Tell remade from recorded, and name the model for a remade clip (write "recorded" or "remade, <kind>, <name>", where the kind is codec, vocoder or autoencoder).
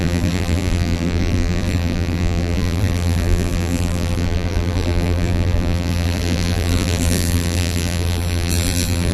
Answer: remade, vocoder, BigVGAN v2